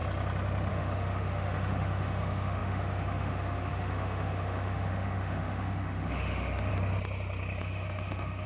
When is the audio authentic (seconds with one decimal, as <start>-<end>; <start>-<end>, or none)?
0.0-0.7; 6.7-7.6